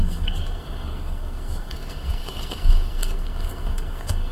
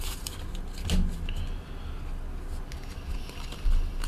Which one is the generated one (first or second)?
first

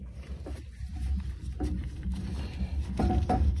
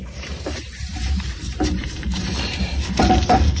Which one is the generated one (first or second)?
second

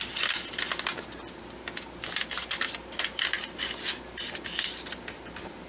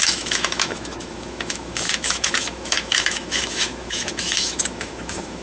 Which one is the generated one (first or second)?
second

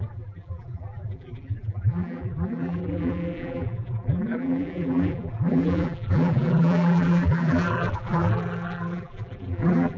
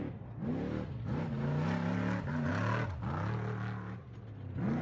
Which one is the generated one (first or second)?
first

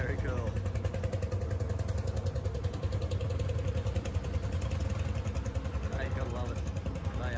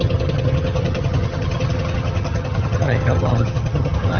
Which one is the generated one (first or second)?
second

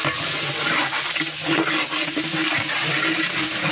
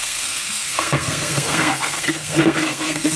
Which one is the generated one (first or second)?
second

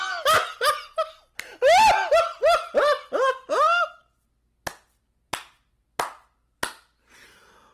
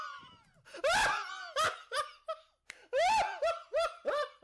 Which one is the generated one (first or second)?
second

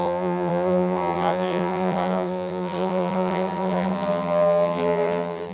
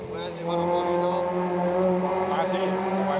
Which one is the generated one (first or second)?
first